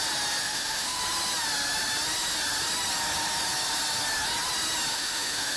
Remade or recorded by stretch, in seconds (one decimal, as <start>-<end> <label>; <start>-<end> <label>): 0.0-0.4 recorded; 0.4-1.0 remade; 1.0-4.9 recorded; 4.9-5.6 remade